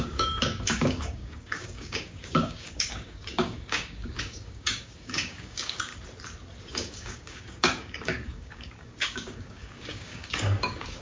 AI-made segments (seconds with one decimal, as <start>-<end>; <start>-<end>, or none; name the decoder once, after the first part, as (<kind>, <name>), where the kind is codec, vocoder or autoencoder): 0.0-5.9 (codec, DAC); 6.7-11.0